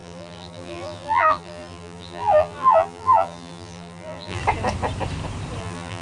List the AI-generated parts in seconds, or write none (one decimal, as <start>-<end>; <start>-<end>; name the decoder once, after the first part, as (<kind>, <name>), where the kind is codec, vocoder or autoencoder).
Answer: 0.0-4.4 (vocoder, BigVGAN v2); 5.6-6.0